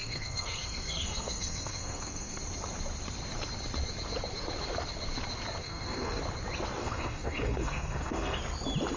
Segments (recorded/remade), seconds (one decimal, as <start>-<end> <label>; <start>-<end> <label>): 0.0-2.4 remade; 2.4-5.6 recorded; 5.6-6.2 remade; 6.2-6.8 recorded; 6.8-8.4 remade; 8.4-9.0 recorded